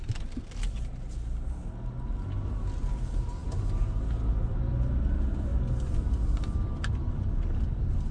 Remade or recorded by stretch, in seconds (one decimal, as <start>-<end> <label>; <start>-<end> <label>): 0.0-8.1 recorded